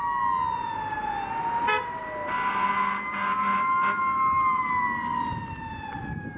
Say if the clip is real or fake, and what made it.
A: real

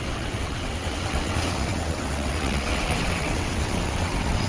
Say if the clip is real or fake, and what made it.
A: fake, vocoder, WaveNeXt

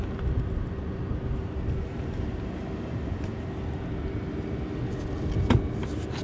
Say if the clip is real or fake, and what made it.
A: real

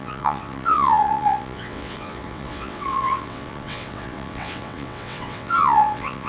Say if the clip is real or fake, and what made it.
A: fake, vocoder, WaveNeXt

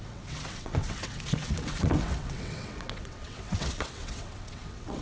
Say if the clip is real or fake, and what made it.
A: fake, vocoder, WaveNeXt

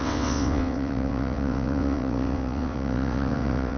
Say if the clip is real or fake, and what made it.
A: fake, vocoder, WaveNeXt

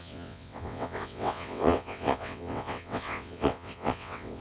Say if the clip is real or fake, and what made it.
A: fake, vocoder, WaveNeXt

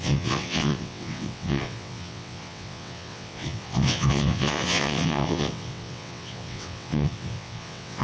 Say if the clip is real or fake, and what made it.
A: fake, vocoder, WaveNeXt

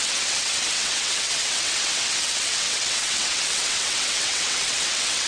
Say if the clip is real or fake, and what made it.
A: fake, vocoder, WaveNeXt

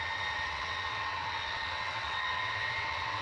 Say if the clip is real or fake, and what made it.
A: fake, vocoder, WaveNeXt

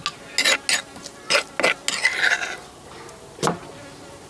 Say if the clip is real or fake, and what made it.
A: real